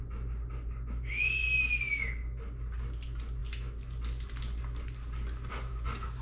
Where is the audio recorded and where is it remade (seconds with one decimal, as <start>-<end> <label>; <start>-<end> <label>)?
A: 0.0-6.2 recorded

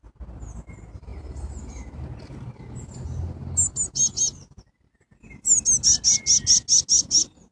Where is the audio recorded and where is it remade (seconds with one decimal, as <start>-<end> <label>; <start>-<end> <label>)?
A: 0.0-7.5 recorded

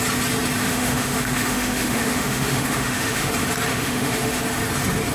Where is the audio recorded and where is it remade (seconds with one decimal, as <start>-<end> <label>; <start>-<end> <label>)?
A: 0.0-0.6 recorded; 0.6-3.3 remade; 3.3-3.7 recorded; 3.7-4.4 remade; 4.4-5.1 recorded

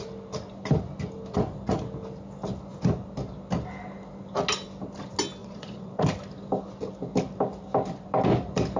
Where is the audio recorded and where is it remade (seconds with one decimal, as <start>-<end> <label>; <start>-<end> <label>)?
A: 0.0-5.4 recorded; 5.4-6.0 remade; 6.0-8.8 recorded

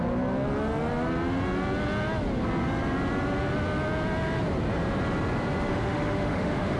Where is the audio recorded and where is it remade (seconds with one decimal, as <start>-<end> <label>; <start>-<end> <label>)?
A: 0.0-5.7 recorded; 5.7-6.8 remade

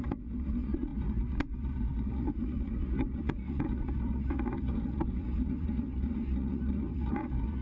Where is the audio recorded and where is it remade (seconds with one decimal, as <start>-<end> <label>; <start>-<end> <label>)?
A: 0.0-7.6 remade